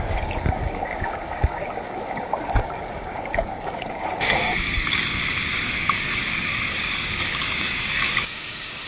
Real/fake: fake